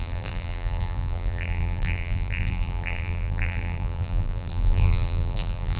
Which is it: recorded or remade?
remade